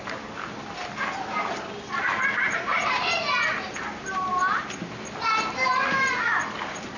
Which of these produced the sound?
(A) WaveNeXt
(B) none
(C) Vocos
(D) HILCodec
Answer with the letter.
B